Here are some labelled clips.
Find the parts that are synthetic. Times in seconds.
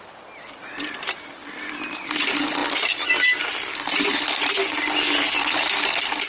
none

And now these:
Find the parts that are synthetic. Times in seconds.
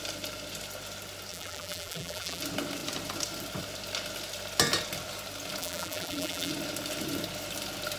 1.3-2.4; 5.6-6.5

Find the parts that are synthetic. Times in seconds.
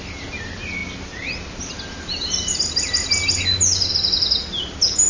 none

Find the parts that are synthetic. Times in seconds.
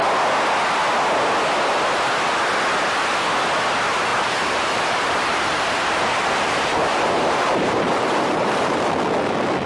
4.1-8.8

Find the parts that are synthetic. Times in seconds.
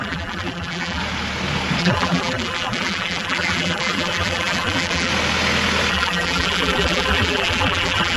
0.0-1.0; 1.8-5.1; 5.9-8.2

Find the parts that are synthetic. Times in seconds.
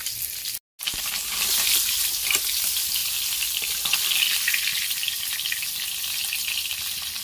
3.0-3.6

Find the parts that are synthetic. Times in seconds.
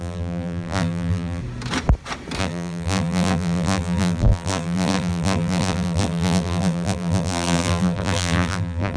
0.0-1.4; 2.4-9.0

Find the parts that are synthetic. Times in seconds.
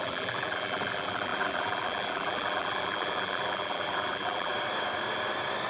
0.0-4.5